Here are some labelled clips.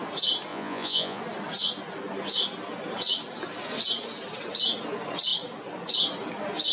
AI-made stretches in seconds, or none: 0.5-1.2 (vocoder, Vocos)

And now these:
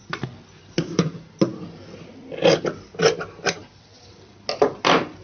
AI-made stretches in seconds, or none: none

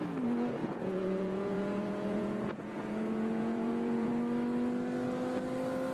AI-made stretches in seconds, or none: 0.6-4.1 (vocoder, Vocos)

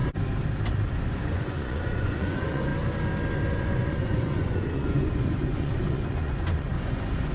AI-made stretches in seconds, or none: 1.0-2.7 (vocoder, Vocos); 3.5-7.3